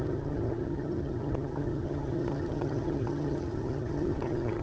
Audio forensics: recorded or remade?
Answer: remade